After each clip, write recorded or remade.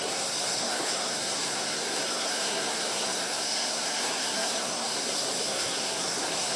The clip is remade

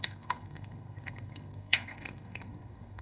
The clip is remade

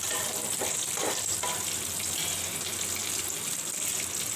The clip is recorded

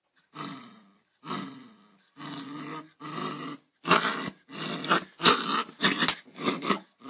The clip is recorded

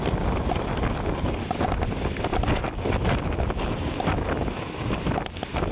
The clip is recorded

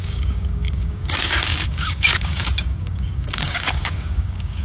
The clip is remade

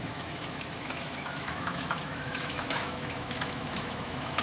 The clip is remade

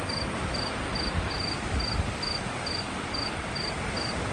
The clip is recorded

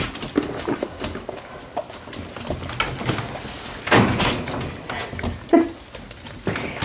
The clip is recorded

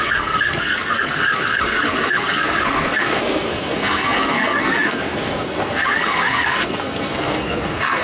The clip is remade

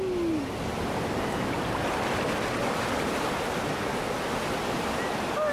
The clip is recorded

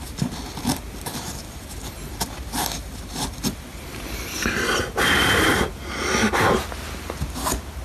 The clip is recorded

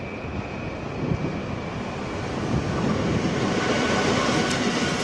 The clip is recorded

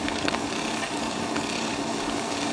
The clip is remade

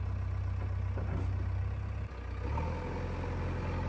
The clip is recorded